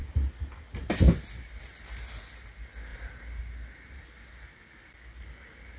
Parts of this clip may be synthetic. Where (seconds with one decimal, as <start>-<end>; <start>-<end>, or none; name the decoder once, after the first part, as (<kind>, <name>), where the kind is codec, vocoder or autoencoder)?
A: none